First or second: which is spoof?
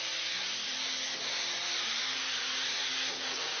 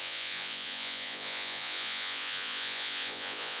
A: second